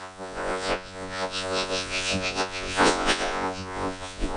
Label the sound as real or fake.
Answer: fake